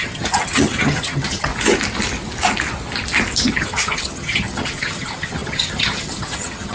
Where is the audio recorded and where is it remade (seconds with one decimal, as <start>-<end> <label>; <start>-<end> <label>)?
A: 0.0-1.5 remade; 1.5-3.5 recorded; 3.5-6.7 remade